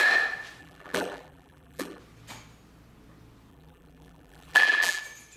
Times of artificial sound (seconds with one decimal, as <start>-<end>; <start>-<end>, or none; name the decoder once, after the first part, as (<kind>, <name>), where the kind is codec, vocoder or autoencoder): 0.6-2.0 (vocoder, BigVGAN v2); 3.5-5.0